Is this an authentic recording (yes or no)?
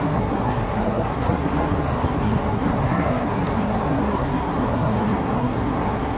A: no